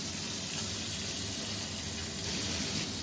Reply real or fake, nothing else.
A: real